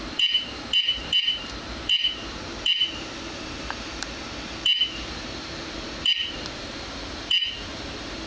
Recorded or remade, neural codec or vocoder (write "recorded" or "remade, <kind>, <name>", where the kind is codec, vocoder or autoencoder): remade, vocoder, BigVGAN v2